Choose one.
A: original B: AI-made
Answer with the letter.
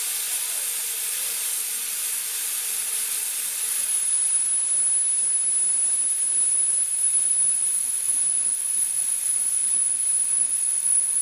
B